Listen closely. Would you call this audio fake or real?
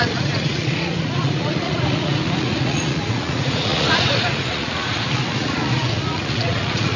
fake